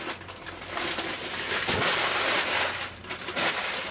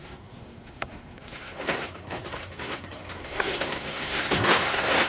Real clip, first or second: first